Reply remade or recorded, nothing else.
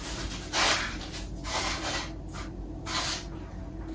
recorded